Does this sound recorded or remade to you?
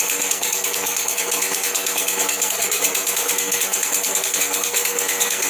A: remade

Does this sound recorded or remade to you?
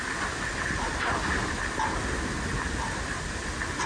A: recorded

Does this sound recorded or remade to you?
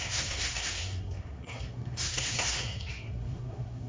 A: remade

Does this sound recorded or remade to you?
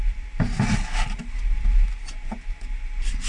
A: recorded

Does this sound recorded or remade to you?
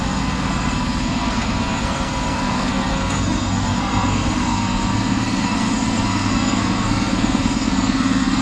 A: remade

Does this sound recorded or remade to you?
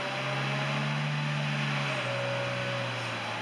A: recorded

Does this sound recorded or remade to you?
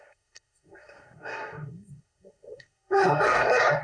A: remade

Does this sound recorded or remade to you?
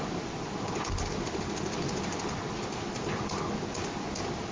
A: recorded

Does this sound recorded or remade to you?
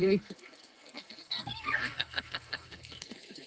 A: remade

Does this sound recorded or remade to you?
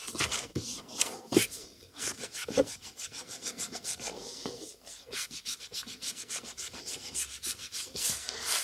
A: remade